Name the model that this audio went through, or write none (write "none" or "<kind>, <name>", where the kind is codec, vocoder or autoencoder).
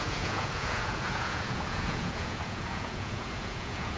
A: vocoder, Vocos